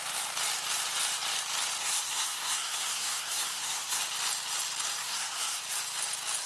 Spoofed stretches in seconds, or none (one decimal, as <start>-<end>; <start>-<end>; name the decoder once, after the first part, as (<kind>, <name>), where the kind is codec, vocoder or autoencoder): 1.8-4.0 (codec, SNAC); 5.0-5.6

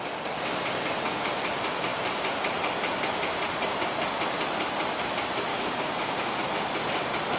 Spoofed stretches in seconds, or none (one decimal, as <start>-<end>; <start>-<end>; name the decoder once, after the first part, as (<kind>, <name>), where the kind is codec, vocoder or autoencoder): 5.5-6.5 (codec, DAC)

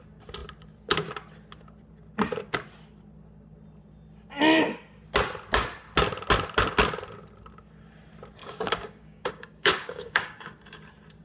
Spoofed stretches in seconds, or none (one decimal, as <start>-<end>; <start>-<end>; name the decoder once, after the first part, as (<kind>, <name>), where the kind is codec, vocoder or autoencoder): 8.4-10.4 (codec, DAC)

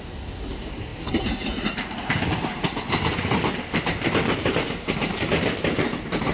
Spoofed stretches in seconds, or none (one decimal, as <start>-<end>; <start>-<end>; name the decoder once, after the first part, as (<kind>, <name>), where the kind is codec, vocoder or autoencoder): 0.0-6.3 (vocoder, BigVGAN v2)

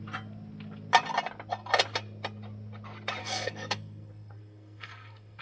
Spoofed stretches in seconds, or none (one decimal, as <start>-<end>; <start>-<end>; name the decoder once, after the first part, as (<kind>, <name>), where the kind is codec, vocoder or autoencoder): 3.2-5.4 (codec, SNAC)

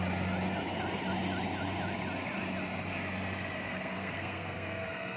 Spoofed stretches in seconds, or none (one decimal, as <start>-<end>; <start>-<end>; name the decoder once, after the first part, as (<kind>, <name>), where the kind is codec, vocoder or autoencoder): 3.7-5.2 (codec, SNAC)

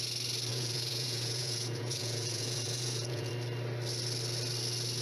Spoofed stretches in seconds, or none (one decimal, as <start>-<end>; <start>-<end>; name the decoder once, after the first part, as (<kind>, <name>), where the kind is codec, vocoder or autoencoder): 0.5-3.3 (vocoder, Vocos)